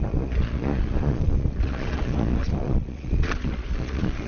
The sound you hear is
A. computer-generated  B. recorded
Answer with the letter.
A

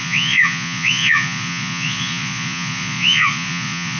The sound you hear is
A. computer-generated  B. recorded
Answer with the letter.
A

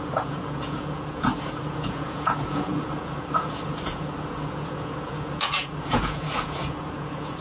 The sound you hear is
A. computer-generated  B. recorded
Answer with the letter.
A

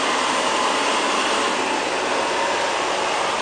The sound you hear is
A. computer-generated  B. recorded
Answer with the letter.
B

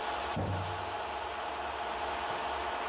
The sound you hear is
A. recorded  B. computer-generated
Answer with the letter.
A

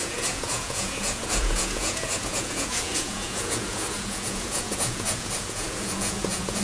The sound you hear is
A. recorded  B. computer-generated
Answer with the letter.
B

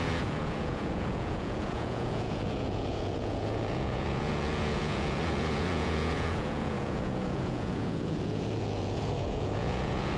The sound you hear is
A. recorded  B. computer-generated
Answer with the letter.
B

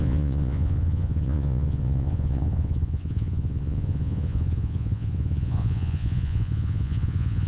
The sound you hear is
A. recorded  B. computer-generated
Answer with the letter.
B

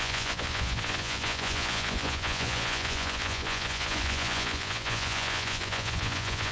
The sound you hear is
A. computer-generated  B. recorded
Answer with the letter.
A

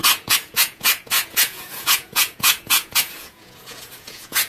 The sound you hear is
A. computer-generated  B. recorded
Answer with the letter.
A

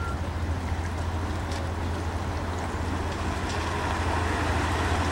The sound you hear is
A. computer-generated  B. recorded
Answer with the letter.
B